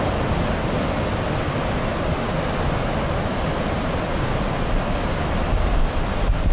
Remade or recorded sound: recorded